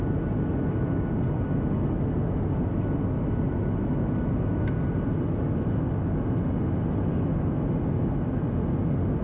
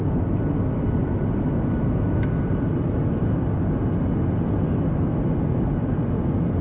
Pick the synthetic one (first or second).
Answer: second